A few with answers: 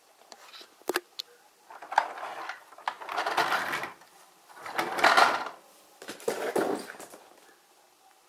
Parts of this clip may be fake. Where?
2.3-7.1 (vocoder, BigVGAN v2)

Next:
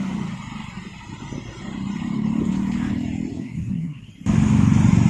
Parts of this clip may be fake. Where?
3.3-4.1 (codec, SNAC)

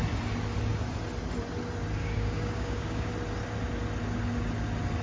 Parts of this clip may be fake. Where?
2.0-3.1 (codec, DAC)

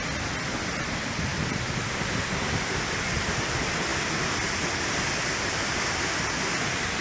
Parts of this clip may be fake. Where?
none

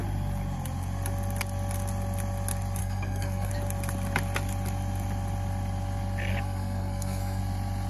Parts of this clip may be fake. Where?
2.8-3.5 (codec, SNAC); 6.3-7.4